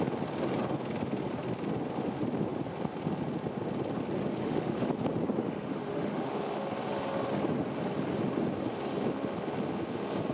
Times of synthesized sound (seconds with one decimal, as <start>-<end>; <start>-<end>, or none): 4.4-4.9; 5.4-6.3